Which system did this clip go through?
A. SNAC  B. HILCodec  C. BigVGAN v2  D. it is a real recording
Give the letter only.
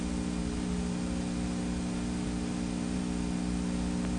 D